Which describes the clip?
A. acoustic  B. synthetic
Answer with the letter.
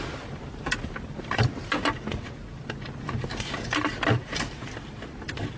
A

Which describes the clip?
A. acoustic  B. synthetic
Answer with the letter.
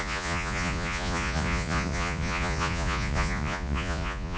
B